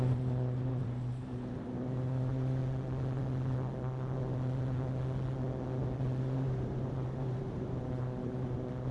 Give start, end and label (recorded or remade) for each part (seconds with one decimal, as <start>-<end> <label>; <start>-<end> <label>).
0.0-2.6 remade; 2.6-6.2 recorded; 6.2-8.9 remade